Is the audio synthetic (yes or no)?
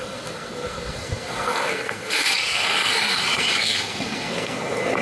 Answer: yes